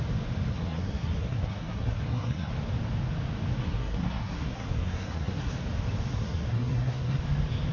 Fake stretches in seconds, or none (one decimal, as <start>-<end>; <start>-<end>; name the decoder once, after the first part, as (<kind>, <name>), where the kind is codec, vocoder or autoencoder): 0.5-2.5 (codec, SNAC); 3.6-5.5; 6.2-7.2